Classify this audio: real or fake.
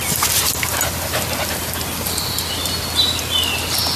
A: real